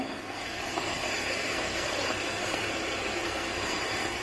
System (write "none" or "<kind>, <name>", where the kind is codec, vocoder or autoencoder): codec, SNAC